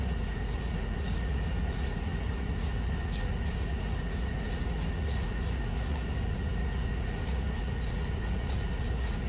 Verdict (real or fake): fake